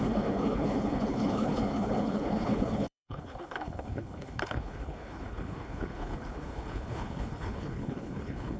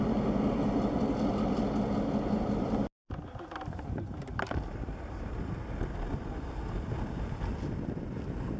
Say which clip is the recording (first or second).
second